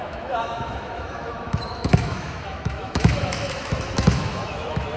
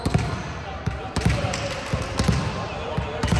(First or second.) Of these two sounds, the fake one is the first